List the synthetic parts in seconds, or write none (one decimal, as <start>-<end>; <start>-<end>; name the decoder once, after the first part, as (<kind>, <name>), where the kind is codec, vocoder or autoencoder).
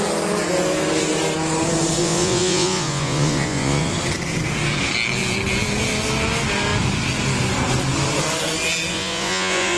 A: 2.0-3.9 (vocoder, Vocos); 8.9-9.8